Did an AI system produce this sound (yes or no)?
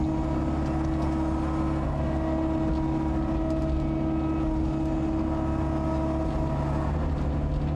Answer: no